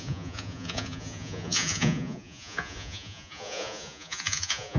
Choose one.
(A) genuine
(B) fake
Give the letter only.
B